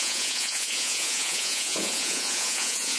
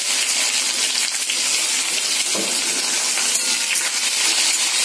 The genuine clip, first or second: second